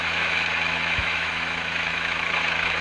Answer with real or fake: fake